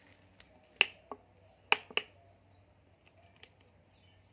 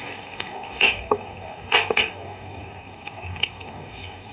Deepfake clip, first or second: second